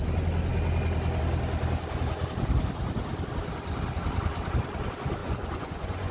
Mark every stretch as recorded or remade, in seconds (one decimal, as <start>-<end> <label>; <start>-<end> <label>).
0.0-5.2 recorded; 5.2-6.1 remade